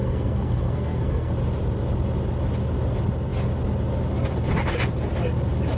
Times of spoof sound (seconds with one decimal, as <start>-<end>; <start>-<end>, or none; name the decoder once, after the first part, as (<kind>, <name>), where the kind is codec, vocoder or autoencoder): 0.0-1.3 (codec, SNAC)